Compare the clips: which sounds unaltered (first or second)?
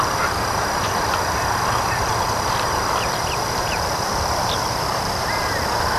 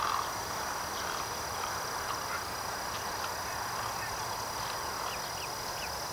second